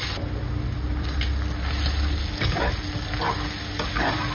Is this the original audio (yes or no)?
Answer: yes